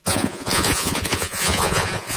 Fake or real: fake